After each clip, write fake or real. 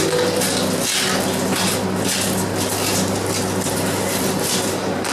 real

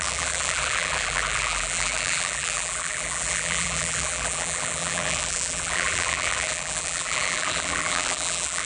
fake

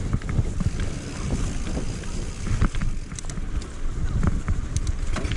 real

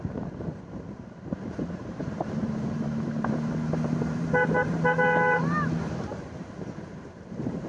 fake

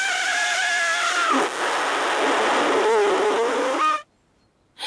real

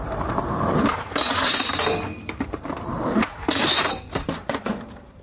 fake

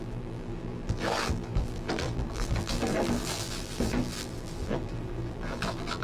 fake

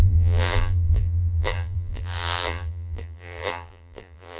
fake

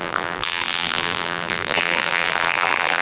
fake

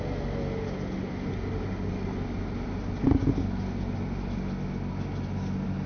real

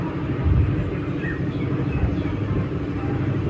real